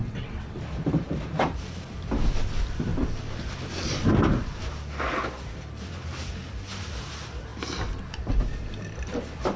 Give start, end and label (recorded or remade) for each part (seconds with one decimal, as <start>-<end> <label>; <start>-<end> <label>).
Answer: 0.0-0.6 remade; 0.6-9.6 recorded